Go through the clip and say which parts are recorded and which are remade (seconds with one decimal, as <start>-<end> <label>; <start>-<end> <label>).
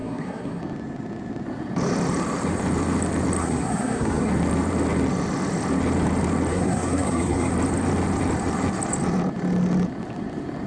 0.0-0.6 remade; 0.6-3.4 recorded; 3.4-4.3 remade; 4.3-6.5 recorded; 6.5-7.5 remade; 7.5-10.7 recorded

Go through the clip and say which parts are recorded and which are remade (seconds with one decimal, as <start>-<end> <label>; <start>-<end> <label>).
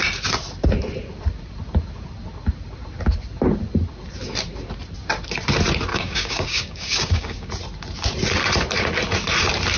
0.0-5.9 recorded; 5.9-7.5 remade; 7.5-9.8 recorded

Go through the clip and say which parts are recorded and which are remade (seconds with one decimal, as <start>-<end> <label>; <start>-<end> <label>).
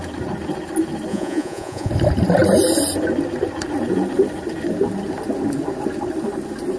0.0-1.1 recorded; 1.1-1.9 remade; 1.9-6.8 recorded